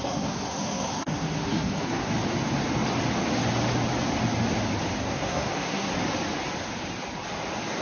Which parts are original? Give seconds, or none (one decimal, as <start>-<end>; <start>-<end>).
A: 2.1-5.0; 5.9-7.8